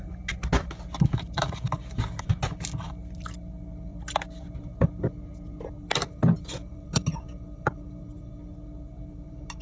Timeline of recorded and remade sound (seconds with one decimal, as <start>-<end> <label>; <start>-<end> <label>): 0.0-3.9 recorded; 3.9-4.5 remade; 4.5-9.6 recorded